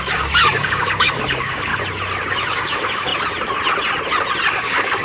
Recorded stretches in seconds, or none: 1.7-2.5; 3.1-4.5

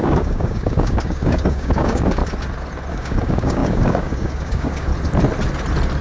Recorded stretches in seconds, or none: 2.2-2.9; 4.9-6.0

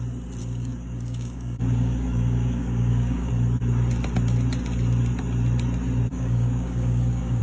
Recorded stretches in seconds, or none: 0.0-0.4; 3.3-6.1

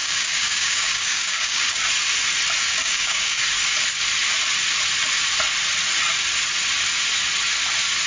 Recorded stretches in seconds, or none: 1.8-2.6; 3.4-8.1

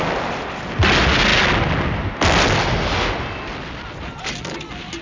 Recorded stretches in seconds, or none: 0.0-5.0

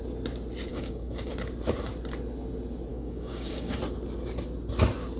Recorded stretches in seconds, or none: 0.0-0.7; 1.3-2.9; 3.8-5.2

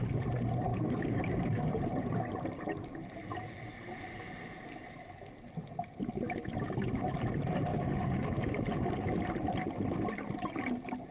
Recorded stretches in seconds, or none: 0.0-0.7; 1.2-7.7; 8.5-11.1

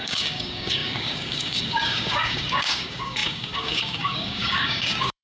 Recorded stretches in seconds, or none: none